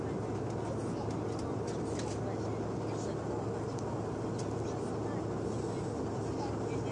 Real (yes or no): yes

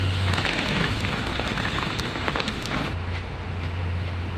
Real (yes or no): no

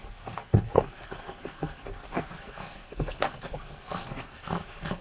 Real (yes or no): no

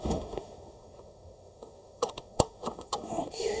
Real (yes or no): no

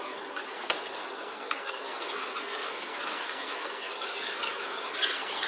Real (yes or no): no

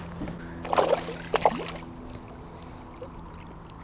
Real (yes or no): yes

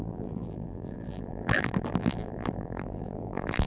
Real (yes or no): no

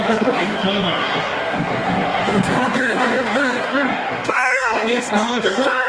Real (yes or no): no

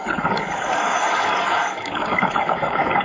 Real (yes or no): no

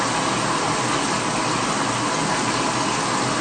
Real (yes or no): yes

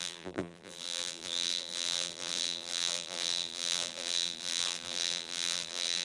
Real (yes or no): no